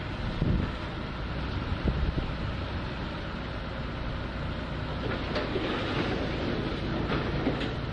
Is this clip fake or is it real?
real